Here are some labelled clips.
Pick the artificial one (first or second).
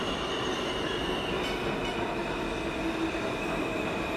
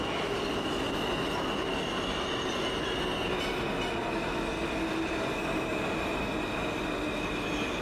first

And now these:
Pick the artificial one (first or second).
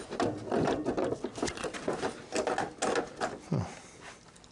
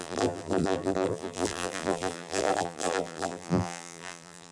second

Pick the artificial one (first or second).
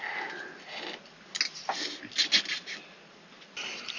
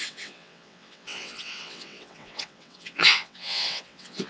second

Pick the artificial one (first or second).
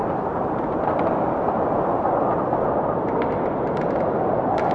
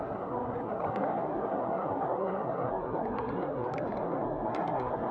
second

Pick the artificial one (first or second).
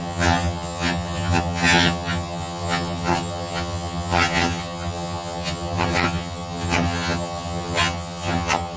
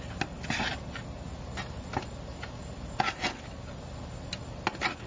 first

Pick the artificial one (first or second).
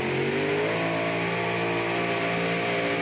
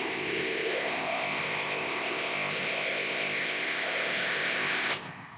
second